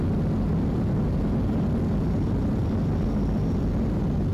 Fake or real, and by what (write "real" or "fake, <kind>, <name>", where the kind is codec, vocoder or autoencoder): real